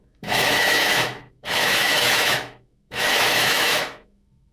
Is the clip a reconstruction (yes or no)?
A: yes